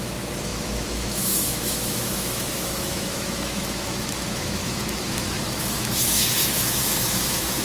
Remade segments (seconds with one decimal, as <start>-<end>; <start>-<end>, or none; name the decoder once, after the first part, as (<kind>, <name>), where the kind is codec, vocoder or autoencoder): 0.0-7.6 (autoencoder, DAC-VAE)